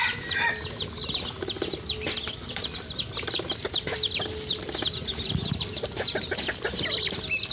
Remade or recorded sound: recorded